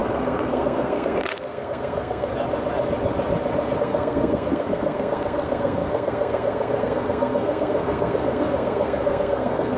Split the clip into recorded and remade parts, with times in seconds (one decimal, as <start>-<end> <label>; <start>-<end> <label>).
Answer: 0.0-2.3 remade; 2.3-3.8 recorded; 3.8-9.8 remade